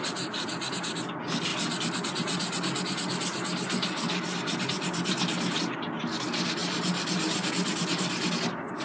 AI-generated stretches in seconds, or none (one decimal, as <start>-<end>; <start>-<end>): none